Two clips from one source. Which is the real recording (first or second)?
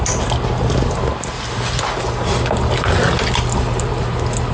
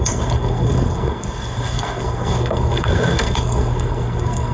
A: first